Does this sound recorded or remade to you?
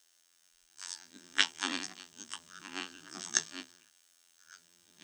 remade